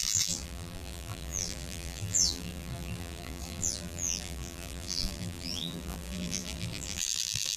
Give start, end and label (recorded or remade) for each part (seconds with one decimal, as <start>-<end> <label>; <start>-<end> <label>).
0.0-7.6 remade